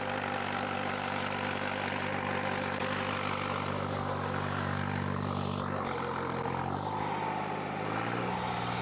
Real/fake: real